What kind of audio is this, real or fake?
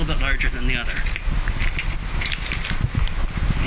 real